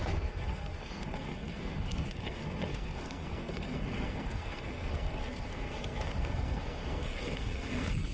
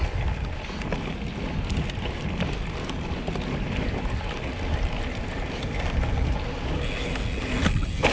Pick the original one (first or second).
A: second